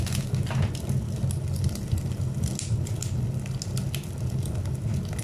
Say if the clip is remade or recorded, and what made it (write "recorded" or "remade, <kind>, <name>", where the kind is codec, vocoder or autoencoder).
recorded